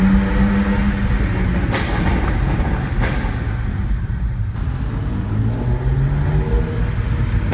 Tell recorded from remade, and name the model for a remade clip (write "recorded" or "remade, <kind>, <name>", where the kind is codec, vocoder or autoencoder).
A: recorded